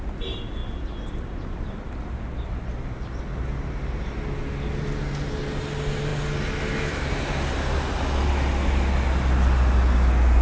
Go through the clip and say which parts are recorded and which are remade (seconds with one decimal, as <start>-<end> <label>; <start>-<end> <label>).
0.0-10.4 recorded